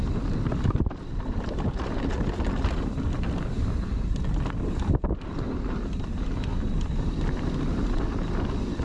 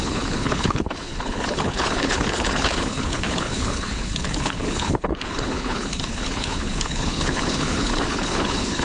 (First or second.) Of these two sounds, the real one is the first